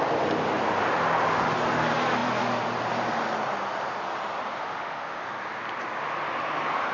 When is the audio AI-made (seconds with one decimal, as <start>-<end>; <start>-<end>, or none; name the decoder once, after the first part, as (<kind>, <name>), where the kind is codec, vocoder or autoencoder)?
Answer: 4.6-5.2 (autoencoder, DAC-VAE)